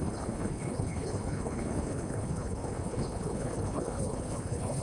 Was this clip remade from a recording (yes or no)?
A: yes